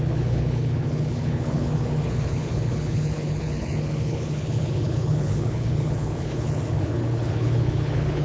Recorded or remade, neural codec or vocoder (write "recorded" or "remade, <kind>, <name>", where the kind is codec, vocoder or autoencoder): remade, codec, HILCodec